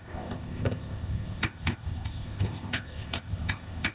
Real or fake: fake